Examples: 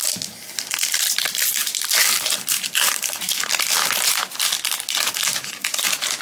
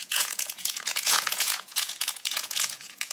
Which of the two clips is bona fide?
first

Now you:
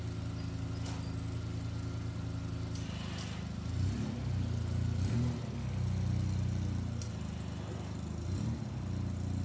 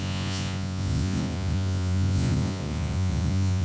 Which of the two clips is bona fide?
first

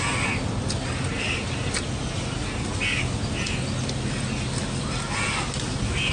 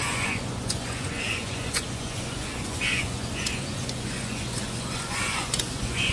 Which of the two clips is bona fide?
first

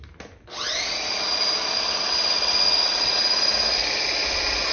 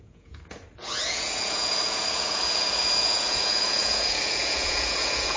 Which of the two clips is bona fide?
first